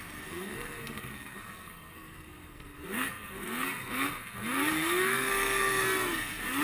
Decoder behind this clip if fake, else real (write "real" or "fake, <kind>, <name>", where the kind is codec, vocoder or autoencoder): fake, codec, SNAC